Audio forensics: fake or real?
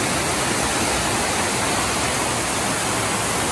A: real